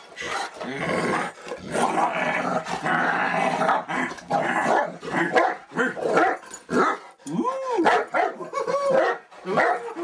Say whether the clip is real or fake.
real